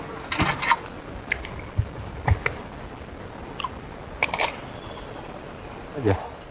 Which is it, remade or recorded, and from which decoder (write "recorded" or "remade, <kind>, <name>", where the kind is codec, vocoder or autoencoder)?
recorded